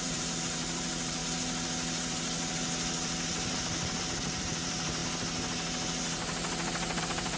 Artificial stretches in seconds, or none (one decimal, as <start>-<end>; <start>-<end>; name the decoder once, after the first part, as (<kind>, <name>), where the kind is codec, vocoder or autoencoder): 0.0-1.2 (vocoder, BigVGAN v2); 4.0-5.0; 7.0-7.4